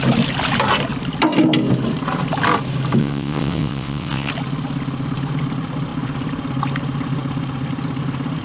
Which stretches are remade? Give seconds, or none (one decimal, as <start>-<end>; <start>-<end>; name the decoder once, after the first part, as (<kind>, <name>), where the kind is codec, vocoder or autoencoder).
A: 3.0-4.3 (vocoder, WaveNeXt)